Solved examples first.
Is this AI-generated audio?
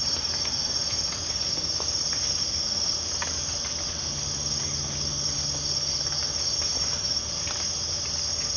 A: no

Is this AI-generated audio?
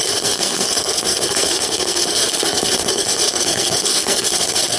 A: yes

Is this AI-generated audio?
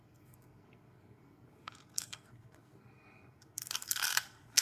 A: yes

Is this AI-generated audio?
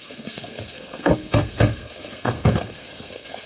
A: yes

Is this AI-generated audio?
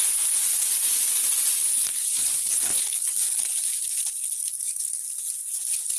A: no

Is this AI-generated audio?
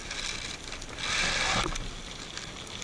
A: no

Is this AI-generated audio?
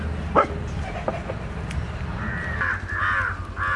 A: no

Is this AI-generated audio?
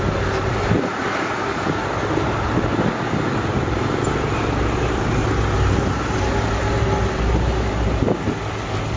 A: no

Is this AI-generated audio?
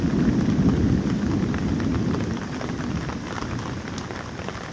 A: no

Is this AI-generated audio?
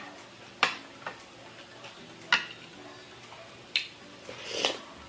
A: no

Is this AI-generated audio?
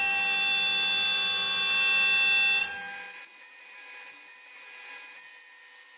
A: no